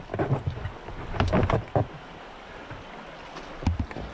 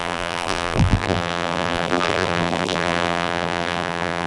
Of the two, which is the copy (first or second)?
second